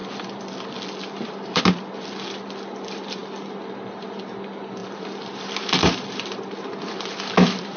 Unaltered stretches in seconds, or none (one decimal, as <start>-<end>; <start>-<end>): 1.6-4.8; 6.5-7.8